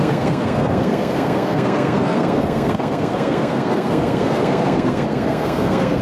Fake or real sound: fake